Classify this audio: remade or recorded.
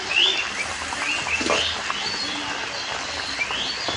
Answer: recorded